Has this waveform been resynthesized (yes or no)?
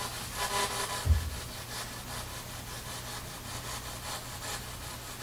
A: no